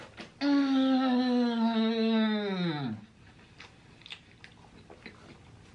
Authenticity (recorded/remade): recorded